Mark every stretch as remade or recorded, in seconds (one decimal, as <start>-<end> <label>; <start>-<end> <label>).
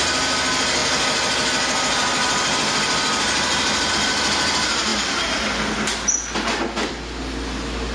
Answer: 0.0-7.9 recorded